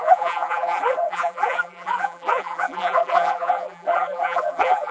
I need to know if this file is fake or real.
fake